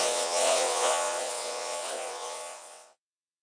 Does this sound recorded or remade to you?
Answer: remade